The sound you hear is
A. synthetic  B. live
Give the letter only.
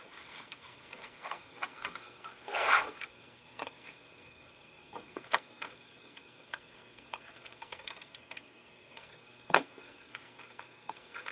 A